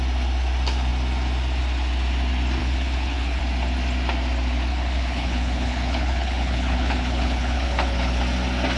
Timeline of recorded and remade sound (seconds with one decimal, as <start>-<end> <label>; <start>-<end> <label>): 0.0-2.6 recorded; 2.6-3.4 remade; 3.4-4.7 recorded; 4.7-8.2 remade; 8.2-8.8 recorded